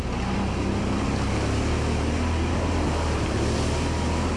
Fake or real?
real